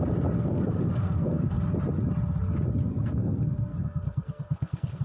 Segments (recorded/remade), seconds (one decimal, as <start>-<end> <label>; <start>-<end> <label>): 0.0-0.4 recorded; 0.4-1.5 remade; 1.5-2.8 recorded; 2.8-5.0 remade